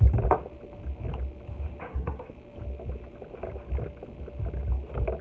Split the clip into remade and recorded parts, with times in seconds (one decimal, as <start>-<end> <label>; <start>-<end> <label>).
0.0-1.8 recorded; 1.8-2.3 remade; 2.3-5.2 recorded